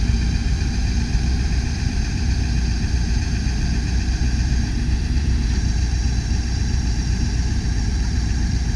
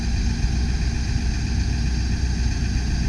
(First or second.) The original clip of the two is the second